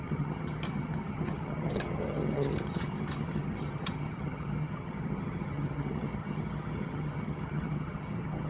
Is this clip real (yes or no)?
no